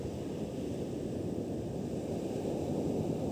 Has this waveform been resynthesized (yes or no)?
no